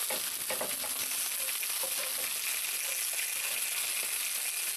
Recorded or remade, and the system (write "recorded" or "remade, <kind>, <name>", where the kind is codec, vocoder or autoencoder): recorded